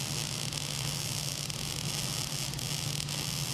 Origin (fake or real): real